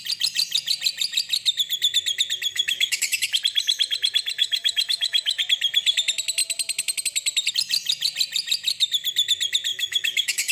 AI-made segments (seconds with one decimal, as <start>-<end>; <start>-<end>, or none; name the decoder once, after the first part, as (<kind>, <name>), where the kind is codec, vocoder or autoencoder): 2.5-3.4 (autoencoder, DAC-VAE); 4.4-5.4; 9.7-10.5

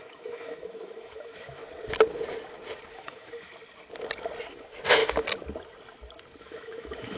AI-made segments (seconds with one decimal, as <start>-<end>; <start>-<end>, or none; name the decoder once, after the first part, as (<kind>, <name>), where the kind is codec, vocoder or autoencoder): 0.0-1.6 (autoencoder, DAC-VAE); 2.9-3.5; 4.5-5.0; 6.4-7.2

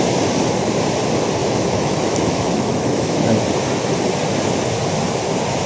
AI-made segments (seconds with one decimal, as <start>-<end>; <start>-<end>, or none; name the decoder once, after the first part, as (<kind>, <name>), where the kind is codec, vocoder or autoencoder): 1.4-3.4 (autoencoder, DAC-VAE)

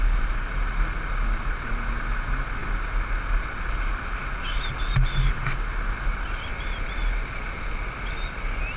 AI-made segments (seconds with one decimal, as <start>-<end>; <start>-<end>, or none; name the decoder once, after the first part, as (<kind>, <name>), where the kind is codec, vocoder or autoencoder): none

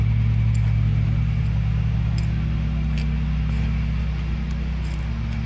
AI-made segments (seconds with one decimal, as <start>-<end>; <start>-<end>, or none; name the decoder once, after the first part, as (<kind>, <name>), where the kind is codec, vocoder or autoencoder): none

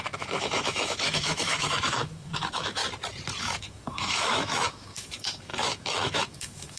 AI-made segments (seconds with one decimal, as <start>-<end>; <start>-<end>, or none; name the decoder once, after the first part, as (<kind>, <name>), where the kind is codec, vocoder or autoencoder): 0.0-2.8 (autoencoder, DAC-VAE); 3.4-6.8